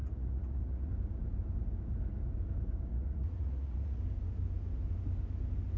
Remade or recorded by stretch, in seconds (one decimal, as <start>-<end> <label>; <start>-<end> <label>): 0.0-0.9 remade; 0.9-2.9 recorded; 2.9-4.0 remade; 4.0-5.8 recorded